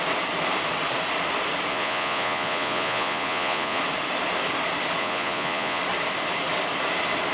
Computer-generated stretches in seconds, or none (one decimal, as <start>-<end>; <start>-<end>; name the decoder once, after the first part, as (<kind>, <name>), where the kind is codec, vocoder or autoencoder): 1.7-3.8 (vocoder, Vocos); 5.0-5.8